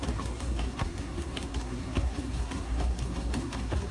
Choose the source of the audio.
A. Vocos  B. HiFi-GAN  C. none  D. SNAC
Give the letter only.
D